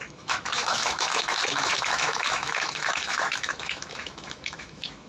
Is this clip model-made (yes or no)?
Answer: yes